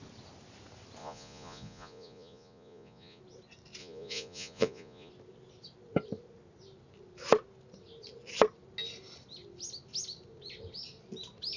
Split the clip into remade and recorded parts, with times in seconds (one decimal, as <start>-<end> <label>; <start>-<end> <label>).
0.0-1.0 recorded; 1.0-3.2 remade; 3.2-3.8 recorded; 3.8-5.1 remade; 5.1-11.6 recorded